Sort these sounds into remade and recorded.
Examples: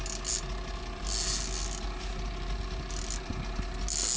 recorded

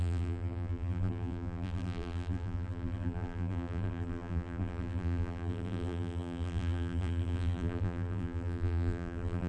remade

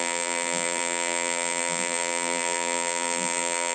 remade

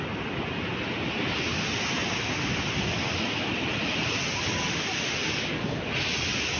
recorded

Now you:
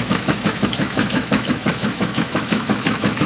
remade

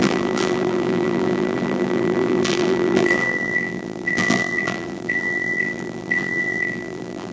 remade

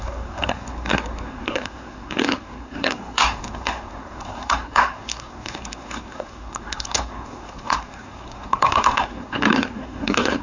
remade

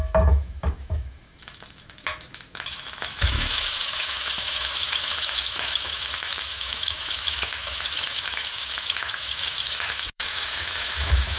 remade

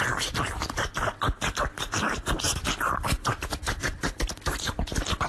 recorded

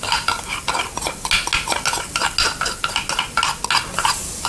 recorded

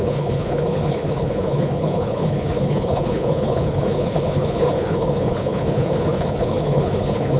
remade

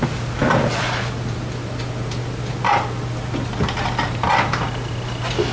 recorded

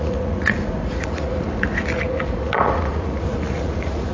remade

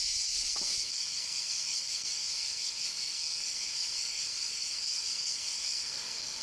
remade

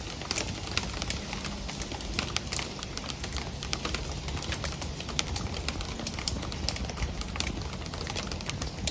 recorded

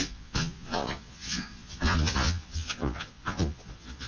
remade